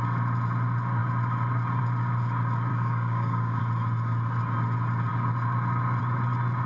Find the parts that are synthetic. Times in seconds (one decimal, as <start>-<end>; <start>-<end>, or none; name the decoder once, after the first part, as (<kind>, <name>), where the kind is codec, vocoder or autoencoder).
2.7-3.6 (codec, DAC)